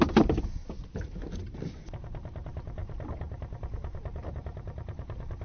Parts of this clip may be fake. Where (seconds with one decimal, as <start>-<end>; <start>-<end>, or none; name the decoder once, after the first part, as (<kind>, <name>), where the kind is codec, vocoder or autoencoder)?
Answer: none